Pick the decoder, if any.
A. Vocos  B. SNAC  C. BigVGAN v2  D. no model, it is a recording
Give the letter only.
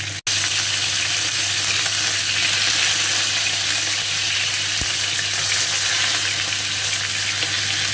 D